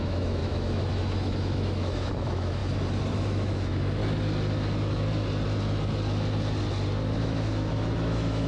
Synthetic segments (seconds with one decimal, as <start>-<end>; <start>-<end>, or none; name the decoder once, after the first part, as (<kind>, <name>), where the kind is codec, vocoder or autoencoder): 0.0-2.6 (autoencoder, DAC-VAE); 3.1-4.0; 7.2-8.5